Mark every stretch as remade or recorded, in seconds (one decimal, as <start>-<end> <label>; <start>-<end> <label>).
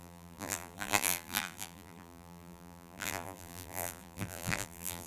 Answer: 0.0-5.1 remade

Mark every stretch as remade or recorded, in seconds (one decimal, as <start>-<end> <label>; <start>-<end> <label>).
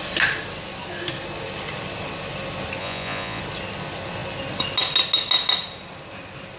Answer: 0.0-2.8 recorded; 2.8-3.4 remade; 3.4-6.6 recorded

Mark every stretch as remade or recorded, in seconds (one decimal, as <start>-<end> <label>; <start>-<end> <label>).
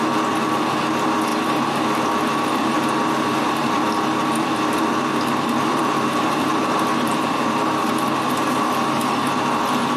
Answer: 0.0-3.3 recorded; 3.3-8.3 remade; 8.3-10.0 recorded